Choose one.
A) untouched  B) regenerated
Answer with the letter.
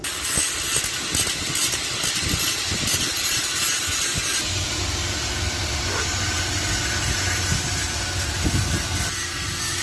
A